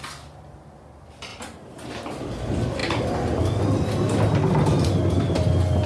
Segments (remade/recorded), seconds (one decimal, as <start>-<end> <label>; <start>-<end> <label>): 0.0-1.3 recorded; 1.3-1.9 remade; 1.9-5.9 recorded